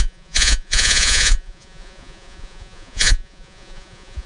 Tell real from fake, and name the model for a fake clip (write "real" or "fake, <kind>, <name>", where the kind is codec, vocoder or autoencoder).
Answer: fake, vocoder, Vocos